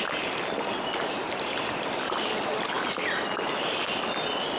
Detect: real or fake real